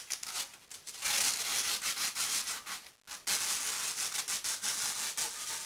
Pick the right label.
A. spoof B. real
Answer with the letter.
B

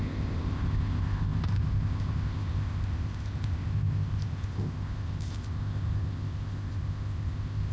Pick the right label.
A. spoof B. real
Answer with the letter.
A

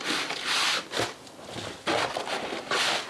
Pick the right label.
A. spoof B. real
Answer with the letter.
B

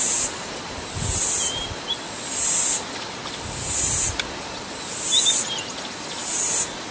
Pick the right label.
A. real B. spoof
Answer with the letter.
A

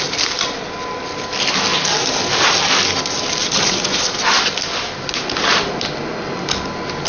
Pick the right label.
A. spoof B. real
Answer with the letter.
B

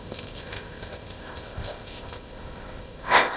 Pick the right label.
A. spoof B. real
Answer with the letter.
A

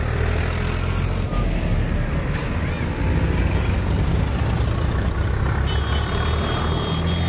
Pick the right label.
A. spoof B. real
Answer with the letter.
B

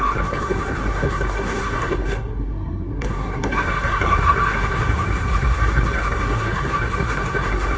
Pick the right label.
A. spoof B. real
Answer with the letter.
A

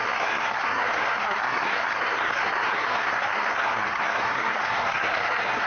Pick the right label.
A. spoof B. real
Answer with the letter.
A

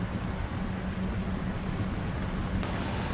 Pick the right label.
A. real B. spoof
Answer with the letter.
A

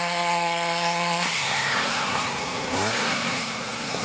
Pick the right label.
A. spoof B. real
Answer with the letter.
A